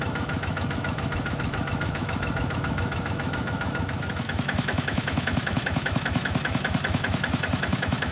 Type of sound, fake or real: fake